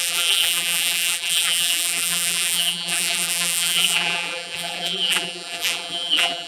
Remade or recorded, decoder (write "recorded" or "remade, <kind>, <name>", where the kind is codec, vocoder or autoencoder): remade, vocoder, BigVGAN v2